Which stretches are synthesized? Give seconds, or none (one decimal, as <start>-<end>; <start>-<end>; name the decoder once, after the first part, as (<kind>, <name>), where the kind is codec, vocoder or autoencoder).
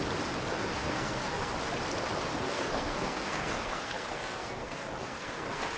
0.5-1.5 (codec, SNAC); 2.3-5.8